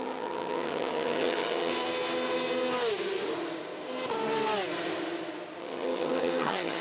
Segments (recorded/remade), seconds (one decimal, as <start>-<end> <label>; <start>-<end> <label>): 0.0-1.7 remade; 1.7-5.6 recorded; 5.6-6.8 remade